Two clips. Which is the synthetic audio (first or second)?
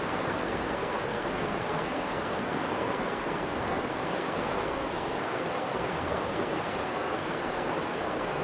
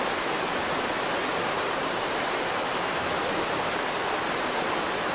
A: first